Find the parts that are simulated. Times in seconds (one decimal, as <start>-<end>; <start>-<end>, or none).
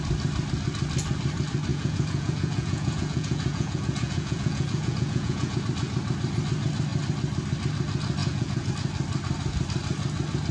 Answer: 1.7-5.6; 8.2-8.7